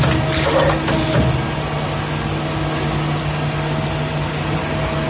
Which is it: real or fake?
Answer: real